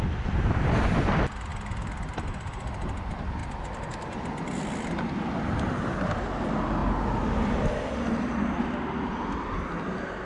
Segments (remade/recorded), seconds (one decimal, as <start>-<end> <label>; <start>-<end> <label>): 0.0-10.3 recorded